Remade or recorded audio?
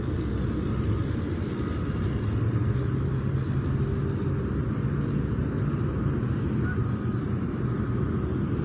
recorded